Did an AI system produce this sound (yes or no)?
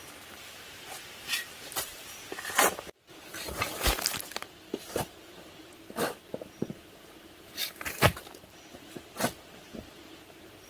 yes